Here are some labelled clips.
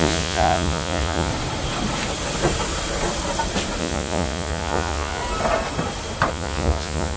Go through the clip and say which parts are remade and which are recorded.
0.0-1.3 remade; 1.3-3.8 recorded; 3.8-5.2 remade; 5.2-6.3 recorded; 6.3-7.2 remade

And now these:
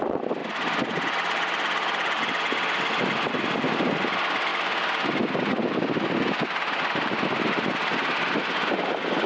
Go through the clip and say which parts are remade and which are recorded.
0.0-9.3 recorded

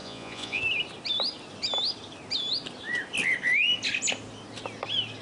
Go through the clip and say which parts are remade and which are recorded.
0.0-0.6 remade; 0.6-5.2 recorded

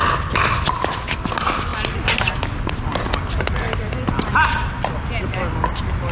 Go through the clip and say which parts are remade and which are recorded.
0.0-6.1 recorded

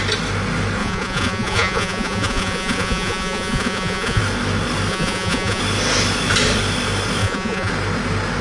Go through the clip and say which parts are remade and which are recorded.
0.0-0.8 recorded; 0.8-4.2 remade; 4.2-4.9 recorded; 4.9-5.6 remade; 5.6-7.2 recorded; 7.2-7.7 remade; 7.7-8.4 recorded

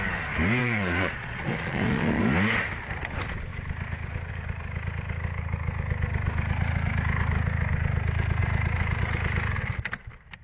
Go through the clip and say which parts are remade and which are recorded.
0.0-0.6 recorded; 0.6-2.2 remade; 2.2-10.4 recorded

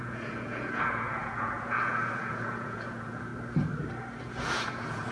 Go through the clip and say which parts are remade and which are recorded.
0.0-3.3 remade; 3.3-4.2 recorded; 4.2-5.1 remade